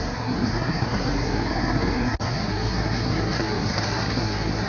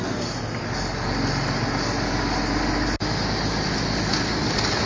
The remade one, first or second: first